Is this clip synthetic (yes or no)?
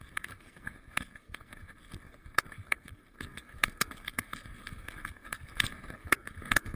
yes